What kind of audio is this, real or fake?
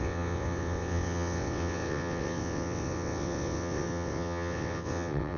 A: fake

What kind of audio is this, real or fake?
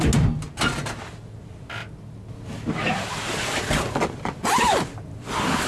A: real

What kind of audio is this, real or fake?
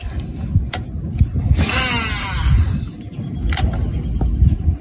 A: real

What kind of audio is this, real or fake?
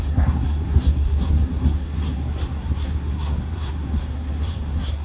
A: fake